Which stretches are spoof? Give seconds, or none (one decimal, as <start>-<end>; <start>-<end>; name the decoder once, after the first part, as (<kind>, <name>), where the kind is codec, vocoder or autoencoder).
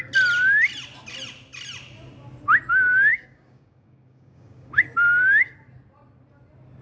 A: 3.1-4.7 (codec, DAC)